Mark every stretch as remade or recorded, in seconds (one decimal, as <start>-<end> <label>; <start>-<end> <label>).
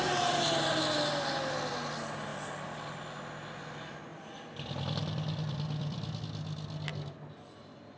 0.0-4.1 recorded; 4.1-6.2 remade; 6.2-8.0 recorded